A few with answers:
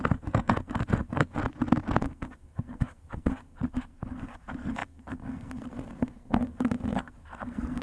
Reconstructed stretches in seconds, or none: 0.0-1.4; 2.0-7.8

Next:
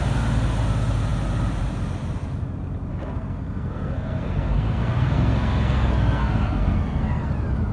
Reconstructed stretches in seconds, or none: 2.9-7.3

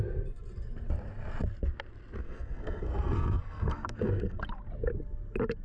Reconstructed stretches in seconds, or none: 2.2-4.4

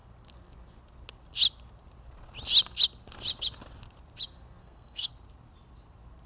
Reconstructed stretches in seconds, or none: 4.6-5.1

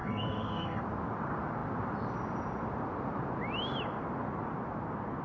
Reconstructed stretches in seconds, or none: 0.0-0.8

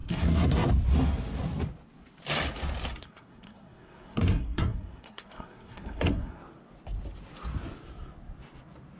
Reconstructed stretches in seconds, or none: 0.0-0.7; 3.0-6.4

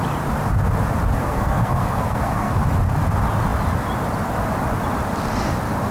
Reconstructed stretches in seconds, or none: 1.2-2.6